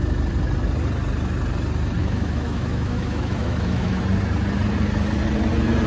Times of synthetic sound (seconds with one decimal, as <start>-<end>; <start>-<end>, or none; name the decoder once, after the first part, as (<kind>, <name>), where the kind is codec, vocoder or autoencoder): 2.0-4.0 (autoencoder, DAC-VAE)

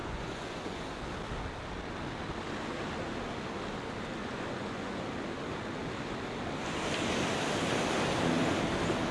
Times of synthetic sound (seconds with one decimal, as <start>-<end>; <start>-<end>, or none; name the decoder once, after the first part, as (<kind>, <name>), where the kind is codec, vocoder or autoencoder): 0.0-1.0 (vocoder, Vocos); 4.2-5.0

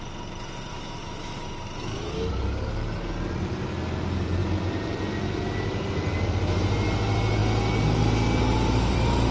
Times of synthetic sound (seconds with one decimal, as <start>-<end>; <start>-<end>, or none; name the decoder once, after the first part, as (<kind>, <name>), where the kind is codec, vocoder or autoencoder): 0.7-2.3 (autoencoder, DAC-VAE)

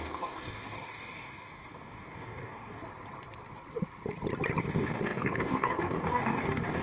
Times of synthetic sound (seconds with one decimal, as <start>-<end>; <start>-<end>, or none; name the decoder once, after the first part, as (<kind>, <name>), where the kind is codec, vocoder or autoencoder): 0.0-2.8 (codec, DAC); 4.6-6.8

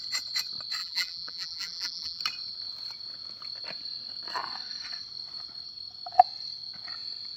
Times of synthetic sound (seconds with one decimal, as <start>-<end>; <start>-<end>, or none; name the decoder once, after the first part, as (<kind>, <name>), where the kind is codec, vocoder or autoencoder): 0.8-2.2 (vocoder, BigVGAN v2)

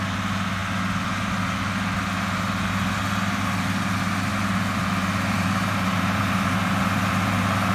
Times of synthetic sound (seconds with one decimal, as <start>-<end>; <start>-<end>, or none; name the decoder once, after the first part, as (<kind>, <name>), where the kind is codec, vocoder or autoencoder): 4.3-6.8 (vocoder, BigVGAN v2)